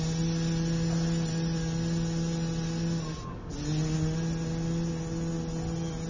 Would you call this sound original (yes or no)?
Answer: yes